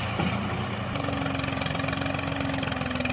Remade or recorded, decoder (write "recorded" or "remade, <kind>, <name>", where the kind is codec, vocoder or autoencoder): recorded